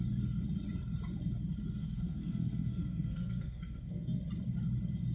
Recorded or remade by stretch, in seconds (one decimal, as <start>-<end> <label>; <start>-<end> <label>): 0.0-1.8 recorded; 1.8-4.2 remade; 4.2-5.1 recorded